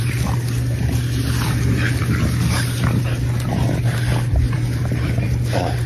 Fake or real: real